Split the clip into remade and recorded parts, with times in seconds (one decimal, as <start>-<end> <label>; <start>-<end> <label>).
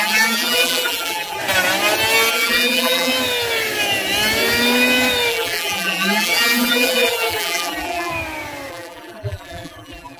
0.0-1.4 remade; 1.4-2.3 recorded; 2.3-3.1 remade; 3.1-5.3 recorded; 5.3-8.1 remade; 8.1-8.7 recorded; 8.7-10.2 remade